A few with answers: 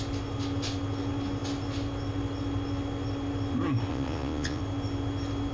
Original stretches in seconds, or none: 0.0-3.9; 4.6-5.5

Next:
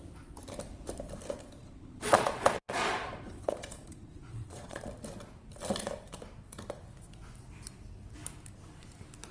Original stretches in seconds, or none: 0.0-1.6; 4.9-9.3

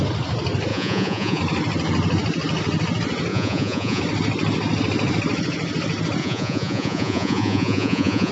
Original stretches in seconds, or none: 0.0-0.7; 1.4-3.3; 4.0-6.2